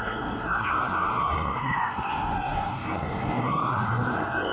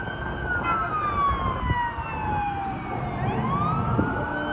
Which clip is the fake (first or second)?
first